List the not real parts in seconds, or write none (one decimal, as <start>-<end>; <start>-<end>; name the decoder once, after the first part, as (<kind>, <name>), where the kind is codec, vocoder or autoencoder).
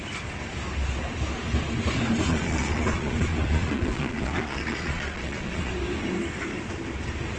2.3-5.7 (vocoder, Vocos)